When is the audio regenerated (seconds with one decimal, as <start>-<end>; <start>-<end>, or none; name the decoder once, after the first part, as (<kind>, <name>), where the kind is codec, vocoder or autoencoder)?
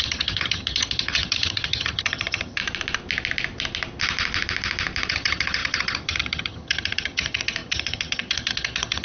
0.0-2.6 (vocoder, HiFi-GAN); 5.1-9.0